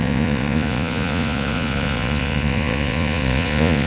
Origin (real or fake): fake